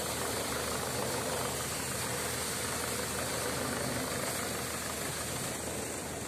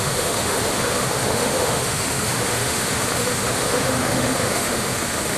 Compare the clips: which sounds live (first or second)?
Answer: first